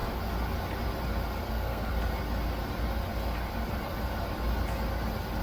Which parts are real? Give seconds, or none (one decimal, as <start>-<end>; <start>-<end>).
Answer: 0.0-1.4; 1.9-5.4